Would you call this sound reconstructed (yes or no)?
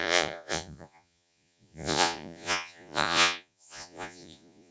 yes